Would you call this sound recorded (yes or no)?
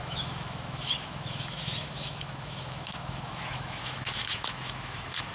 no